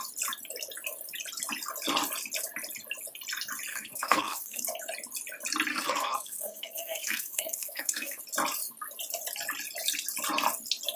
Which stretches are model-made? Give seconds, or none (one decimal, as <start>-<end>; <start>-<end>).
3.7-4.6; 5.7-8.2